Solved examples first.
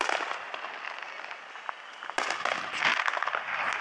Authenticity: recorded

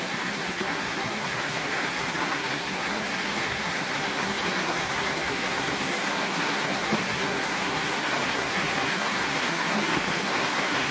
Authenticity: remade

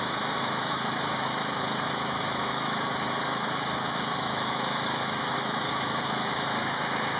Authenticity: remade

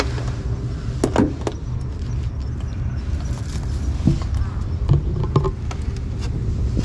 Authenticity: recorded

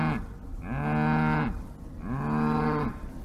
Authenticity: recorded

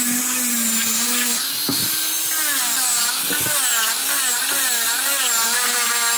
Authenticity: recorded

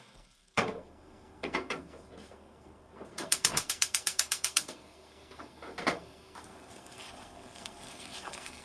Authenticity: remade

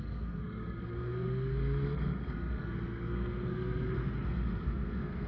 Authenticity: remade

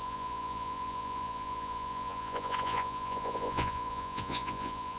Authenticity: remade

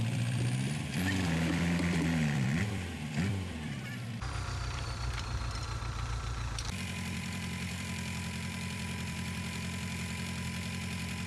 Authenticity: remade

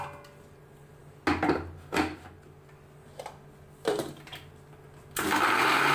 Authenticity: recorded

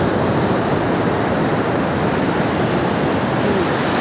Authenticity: recorded